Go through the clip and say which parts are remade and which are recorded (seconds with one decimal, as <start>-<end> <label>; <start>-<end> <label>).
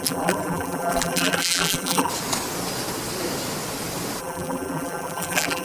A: 0.0-2.1 remade; 2.1-4.2 recorded; 4.2-5.6 remade